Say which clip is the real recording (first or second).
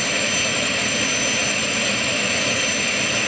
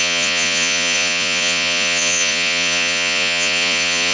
first